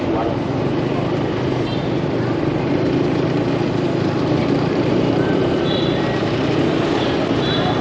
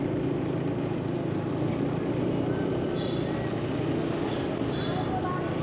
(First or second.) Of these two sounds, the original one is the second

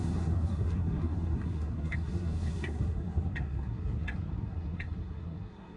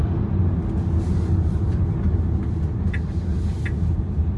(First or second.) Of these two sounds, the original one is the second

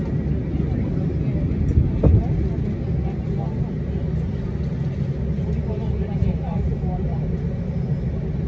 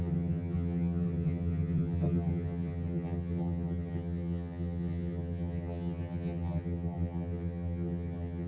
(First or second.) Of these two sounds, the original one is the first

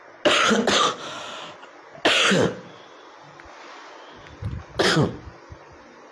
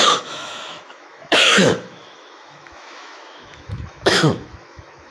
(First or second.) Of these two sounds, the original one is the first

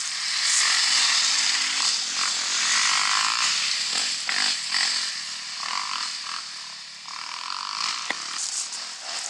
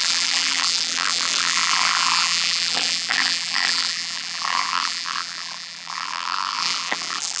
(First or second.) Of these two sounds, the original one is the first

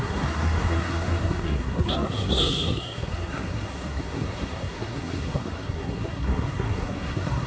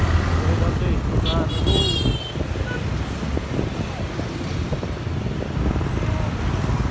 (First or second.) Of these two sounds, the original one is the second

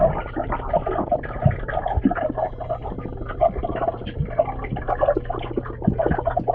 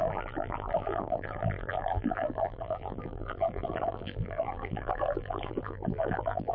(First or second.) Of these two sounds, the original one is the first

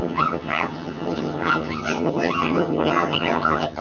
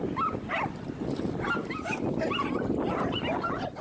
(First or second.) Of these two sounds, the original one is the second